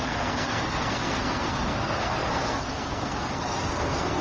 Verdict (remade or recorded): remade